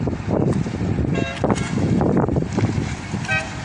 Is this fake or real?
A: fake